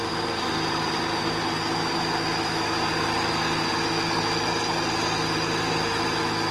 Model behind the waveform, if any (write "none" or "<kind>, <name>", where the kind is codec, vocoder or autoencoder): none